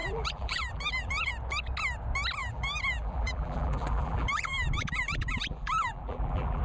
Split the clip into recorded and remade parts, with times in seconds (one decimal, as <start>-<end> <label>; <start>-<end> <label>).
0.0-1.3 remade; 1.3-2.4 recorded; 2.4-6.6 remade